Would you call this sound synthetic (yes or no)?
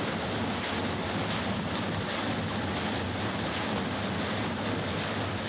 no